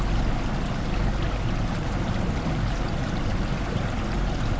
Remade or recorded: recorded